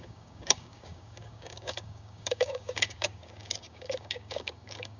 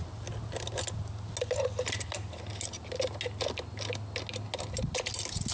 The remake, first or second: first